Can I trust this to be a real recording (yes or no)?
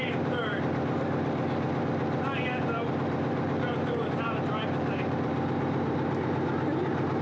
no